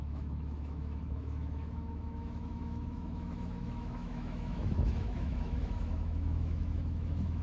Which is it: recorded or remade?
remade